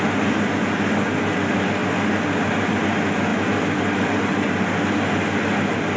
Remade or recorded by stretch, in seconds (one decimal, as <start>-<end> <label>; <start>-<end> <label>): 0.0-6.0 recorded